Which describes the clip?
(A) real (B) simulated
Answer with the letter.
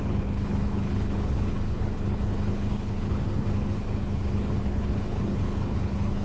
B